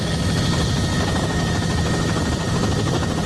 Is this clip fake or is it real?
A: real